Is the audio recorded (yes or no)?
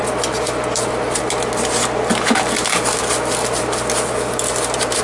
yes